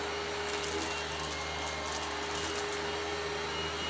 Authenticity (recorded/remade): recorded